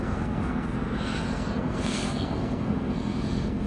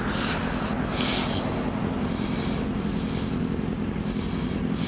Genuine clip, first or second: second